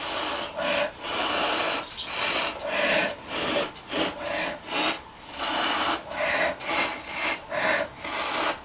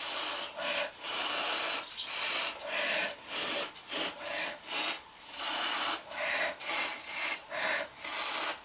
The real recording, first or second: first